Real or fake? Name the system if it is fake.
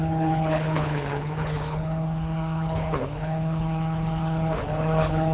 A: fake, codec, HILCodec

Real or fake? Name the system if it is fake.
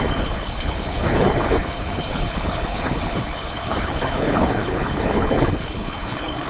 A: fake, codec, HILCodec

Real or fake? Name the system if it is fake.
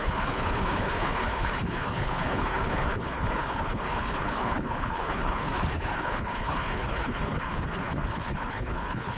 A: fake, codec, HILCodec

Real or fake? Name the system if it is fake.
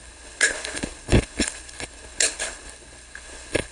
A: fake, codec, HILCodec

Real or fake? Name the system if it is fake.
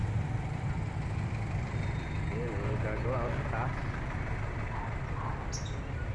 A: real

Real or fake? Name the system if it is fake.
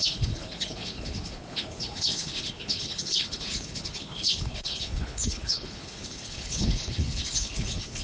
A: fake, codec, HILCodec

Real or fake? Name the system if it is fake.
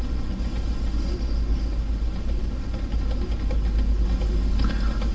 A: real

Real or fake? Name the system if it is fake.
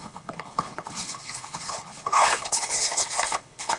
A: fake, codec, HILCodec